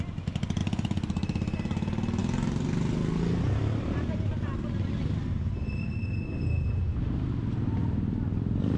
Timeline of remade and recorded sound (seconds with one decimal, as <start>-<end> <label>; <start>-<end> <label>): 0.0-8.8 recorded